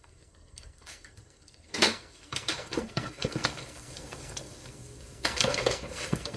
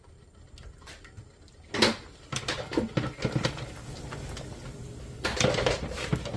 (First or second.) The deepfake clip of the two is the first